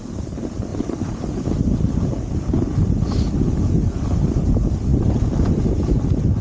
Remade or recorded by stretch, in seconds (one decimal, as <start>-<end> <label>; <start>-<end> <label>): 0.0-0.7 recorded; 0.7-1.6 remade; 1.6-4.9 recorded; 4.9-6.0 remade; 6.0-6.4 recorded